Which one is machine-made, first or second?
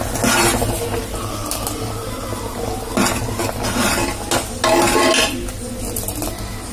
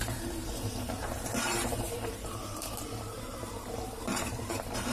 second